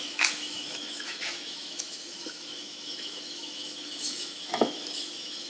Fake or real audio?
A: fake